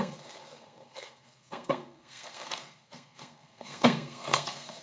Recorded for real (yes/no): no